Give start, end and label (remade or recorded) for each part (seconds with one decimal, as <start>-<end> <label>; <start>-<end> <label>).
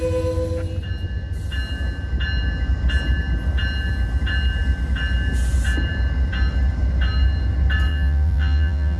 0.0-7.9 recorded; 7.9-9.0 remade